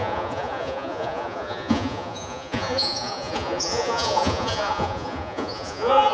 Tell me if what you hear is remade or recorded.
remade